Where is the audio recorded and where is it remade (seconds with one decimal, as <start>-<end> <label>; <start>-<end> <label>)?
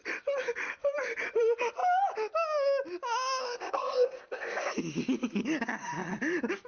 0.0-3.4 recorded; 3.4-4.7 remade; 4.7-6.7 recorded